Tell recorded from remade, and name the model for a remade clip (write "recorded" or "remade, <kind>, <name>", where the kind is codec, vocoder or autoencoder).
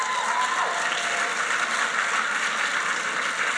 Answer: recorded